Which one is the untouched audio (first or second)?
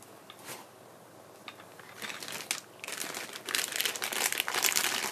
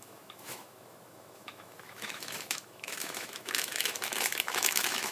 first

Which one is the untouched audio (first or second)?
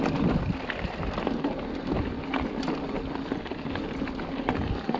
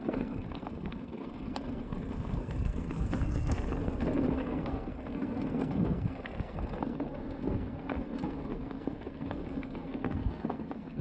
first